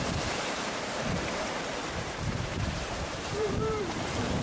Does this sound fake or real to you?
fake